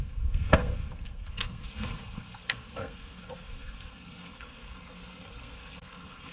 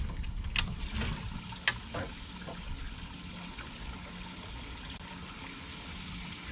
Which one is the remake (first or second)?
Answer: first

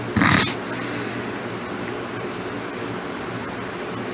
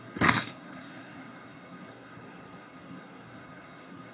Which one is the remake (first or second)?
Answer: second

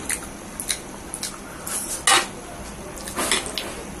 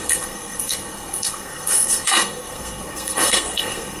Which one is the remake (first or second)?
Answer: second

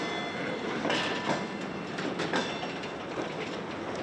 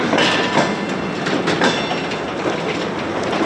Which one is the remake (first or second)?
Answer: first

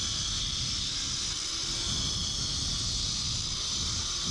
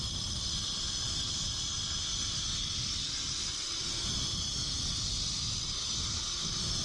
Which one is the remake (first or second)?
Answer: second